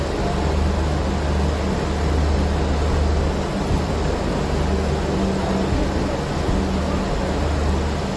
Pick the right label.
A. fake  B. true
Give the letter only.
B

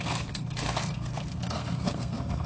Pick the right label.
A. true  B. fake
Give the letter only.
B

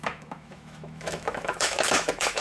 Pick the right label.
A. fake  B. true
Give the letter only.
A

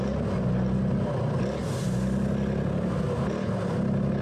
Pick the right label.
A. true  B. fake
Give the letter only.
A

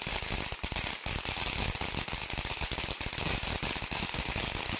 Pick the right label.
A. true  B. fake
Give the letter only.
A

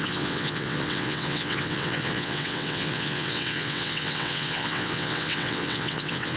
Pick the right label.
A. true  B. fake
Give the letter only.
B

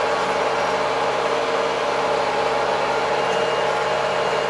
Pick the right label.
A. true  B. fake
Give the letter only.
A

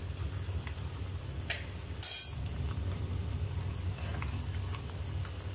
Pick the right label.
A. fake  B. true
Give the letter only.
B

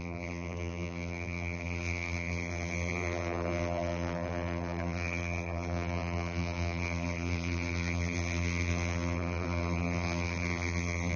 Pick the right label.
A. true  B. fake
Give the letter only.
B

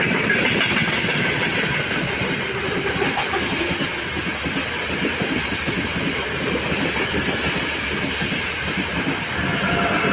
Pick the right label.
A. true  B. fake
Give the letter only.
A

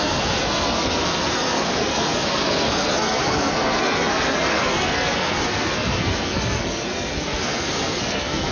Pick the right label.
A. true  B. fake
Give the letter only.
B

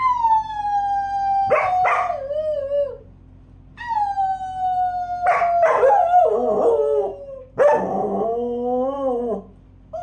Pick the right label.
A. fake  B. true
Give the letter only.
B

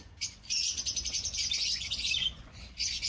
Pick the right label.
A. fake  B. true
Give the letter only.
A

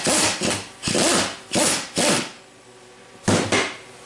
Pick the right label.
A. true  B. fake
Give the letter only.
A